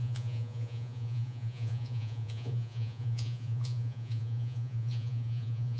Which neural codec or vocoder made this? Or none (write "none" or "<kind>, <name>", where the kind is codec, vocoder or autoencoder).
vocoder, Vocos